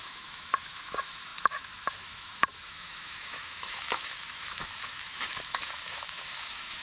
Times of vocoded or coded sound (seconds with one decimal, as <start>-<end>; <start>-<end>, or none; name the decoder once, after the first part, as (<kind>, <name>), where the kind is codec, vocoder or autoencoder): 0.0-6.8 (autoencoder, DAC-VAE)